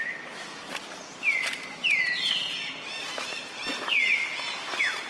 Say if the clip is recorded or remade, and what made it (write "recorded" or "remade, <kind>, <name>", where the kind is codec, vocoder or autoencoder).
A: recorded